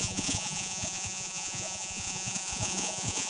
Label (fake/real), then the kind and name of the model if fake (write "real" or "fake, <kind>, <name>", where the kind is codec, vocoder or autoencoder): fake, vocoder, Vocos